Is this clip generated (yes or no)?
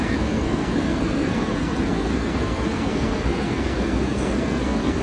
yes